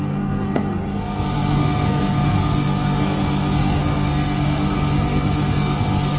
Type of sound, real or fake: fake